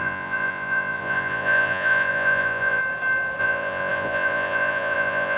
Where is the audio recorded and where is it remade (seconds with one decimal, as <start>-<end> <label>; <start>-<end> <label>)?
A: 0.0-2.8 remade; 2.8-3.4 recorded; 3.4-5.4 remade